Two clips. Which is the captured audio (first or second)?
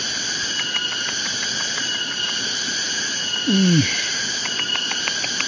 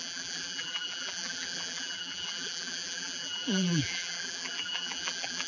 first